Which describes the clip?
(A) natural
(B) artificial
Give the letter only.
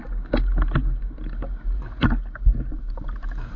A